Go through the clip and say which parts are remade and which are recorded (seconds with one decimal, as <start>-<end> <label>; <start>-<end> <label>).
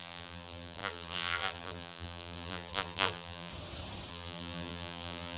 0.0-3.5 remade; 3.5-4.1 recorded; 4.1-5.4 remade